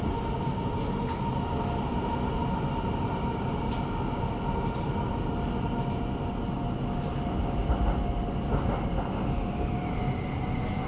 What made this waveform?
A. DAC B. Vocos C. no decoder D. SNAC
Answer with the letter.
C